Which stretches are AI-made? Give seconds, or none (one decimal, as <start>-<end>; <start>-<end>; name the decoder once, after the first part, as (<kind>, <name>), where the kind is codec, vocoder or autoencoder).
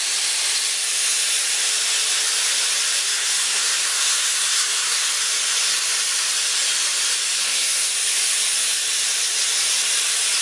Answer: 3.0-5.1 (codec, SNAC); 7.4-7.9